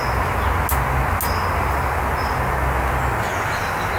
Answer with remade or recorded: recorded